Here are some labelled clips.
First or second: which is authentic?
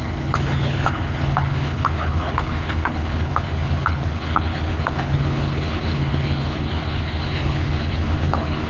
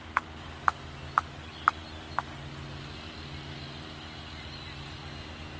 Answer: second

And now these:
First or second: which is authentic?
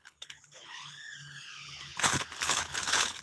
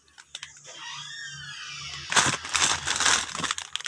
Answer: second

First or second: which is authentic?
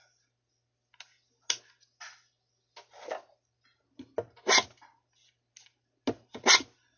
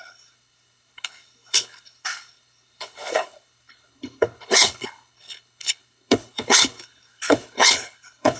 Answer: first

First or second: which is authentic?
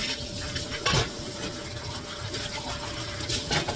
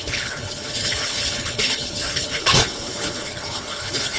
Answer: first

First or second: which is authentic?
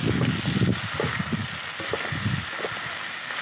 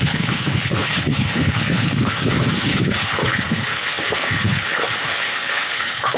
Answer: first